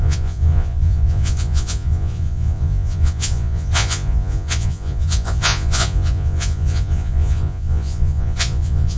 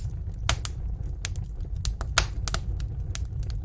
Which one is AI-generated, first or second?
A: first